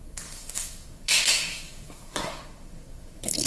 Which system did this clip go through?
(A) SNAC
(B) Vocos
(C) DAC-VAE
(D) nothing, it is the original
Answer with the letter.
A